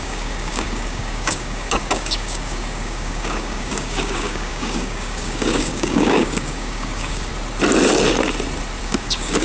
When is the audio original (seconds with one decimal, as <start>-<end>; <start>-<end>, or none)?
7.3-8.8